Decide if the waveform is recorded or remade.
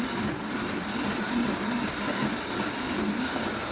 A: recorded